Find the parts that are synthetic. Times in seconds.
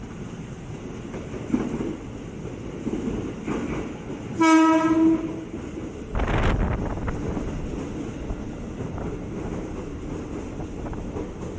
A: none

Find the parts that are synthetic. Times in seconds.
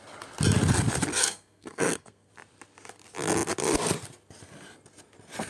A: 1.1-2.3 (codec, SNAC)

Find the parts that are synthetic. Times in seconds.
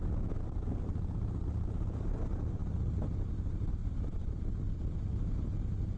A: 3.8-4.5 (vocoder, BigVGAN v2)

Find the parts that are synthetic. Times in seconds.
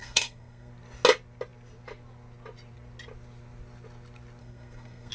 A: 0.0-0.7 (codec, SNAC); 4.4-5.1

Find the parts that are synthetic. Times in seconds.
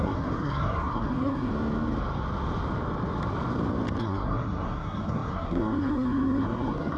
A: 0.0-1.5 (codec, SNAC); 4.0-7.0